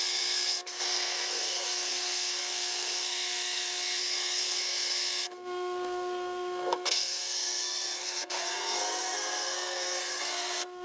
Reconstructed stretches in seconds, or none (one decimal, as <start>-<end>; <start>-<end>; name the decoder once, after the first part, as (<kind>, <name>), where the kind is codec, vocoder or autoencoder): 0.0-10.8 (codec, SNAC)